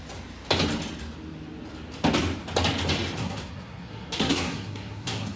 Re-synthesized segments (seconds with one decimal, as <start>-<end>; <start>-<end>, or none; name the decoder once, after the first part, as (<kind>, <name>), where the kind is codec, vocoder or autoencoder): 3.2-5.4 (codec, SNAC)